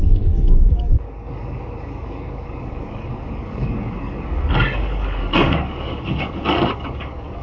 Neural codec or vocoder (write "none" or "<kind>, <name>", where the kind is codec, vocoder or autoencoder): codec, DAC